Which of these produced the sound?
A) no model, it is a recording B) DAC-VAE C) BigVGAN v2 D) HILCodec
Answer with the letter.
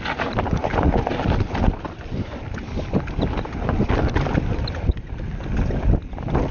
A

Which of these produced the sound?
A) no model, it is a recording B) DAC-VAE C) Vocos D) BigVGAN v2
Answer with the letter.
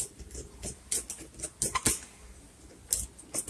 A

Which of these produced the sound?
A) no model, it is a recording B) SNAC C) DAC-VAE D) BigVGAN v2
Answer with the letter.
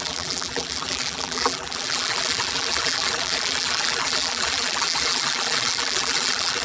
D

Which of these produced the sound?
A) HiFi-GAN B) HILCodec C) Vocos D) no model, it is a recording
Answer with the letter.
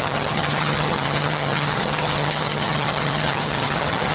A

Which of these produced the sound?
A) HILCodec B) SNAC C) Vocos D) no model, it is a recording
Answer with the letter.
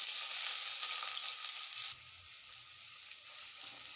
D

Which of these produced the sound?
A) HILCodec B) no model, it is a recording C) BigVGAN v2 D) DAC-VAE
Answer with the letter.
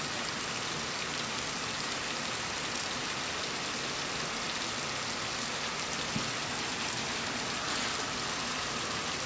B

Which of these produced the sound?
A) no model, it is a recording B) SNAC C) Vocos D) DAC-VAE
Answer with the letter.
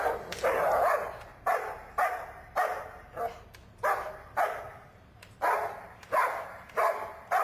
A